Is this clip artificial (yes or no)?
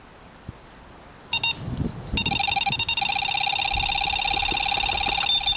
no